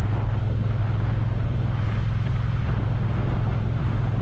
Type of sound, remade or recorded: recorded